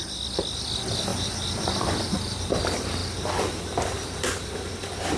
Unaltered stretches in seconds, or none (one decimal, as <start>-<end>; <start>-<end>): 1.1-2.1; 3.0-5.2